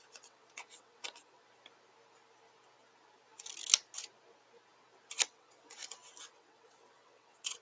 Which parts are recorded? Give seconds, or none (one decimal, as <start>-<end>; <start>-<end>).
1.5-5.3; 5.8-6.3